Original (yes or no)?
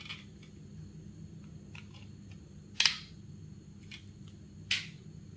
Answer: yes